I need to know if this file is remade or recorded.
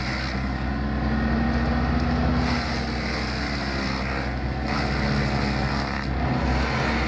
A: recorded